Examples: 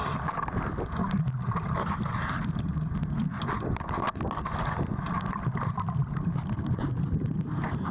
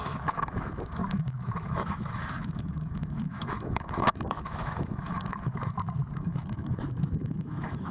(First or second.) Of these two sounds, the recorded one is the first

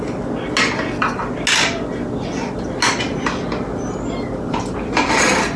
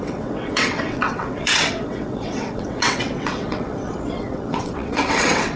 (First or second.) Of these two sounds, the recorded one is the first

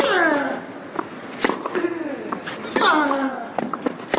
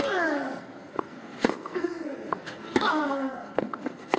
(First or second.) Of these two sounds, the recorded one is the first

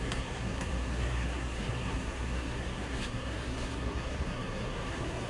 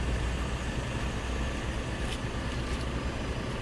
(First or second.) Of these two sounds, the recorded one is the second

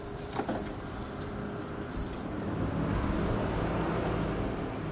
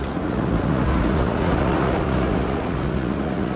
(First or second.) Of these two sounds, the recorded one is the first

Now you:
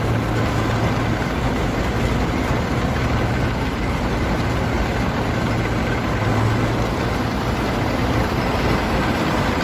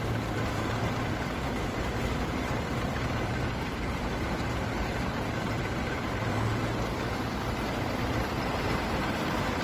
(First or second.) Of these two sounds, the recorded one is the first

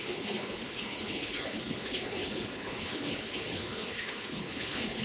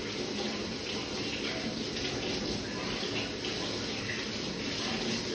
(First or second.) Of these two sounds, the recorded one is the second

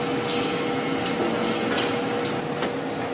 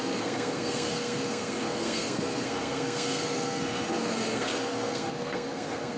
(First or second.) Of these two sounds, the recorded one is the first